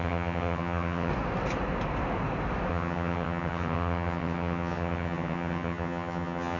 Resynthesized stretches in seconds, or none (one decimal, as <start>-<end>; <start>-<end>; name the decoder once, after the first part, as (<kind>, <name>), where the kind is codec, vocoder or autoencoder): 0.0-1.1 (vocoder, HiFi-GAN); 2.7-6.6